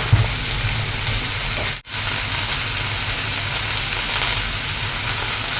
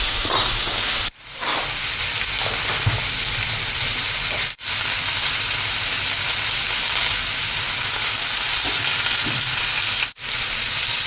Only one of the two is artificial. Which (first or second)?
second